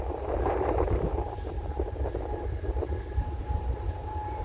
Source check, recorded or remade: remade